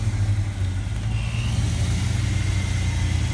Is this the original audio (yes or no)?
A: yes